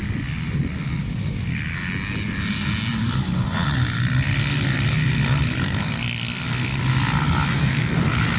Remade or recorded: recorded